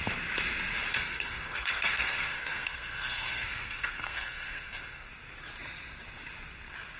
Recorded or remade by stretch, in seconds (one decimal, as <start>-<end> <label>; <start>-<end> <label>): 0.0-0.9 recorded; 0.9-5.1 remade; 5.1-7.0 recorded